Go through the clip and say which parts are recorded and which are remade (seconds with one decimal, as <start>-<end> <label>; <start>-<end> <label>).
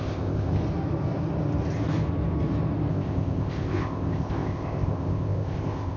0.0-0.6 remade; 0.6-2.9 recorded; 2.9-6.0 remade